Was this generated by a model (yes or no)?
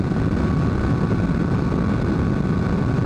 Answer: no